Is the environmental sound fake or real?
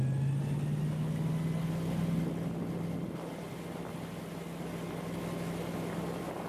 real